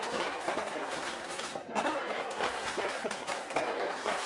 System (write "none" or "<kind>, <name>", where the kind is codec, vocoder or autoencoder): codec, SNAC